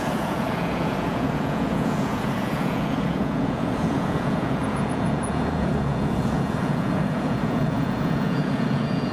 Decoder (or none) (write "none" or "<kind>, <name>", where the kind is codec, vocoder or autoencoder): vocoder, Vocos